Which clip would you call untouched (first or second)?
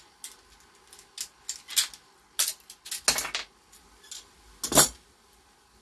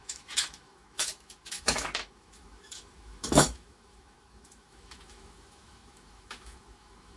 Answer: first